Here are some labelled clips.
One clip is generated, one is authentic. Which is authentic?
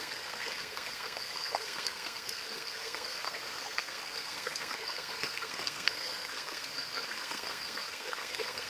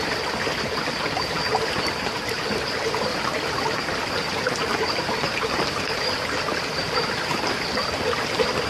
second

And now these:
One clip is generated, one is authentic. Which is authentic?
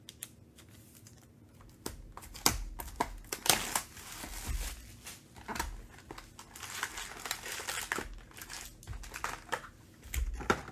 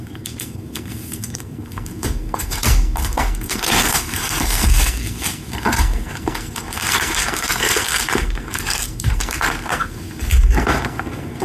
first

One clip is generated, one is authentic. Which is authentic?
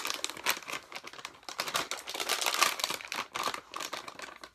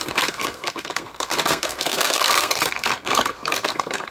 first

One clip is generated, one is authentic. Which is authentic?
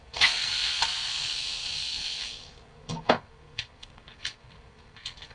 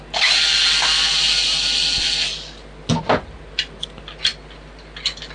second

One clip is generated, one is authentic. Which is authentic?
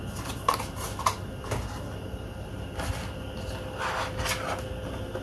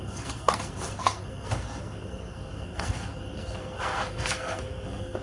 first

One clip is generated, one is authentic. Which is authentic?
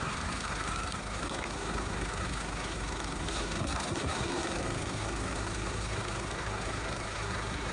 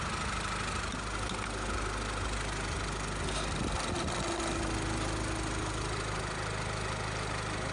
second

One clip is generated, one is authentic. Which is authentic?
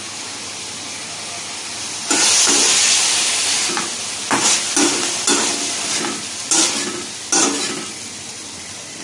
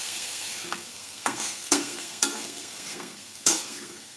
first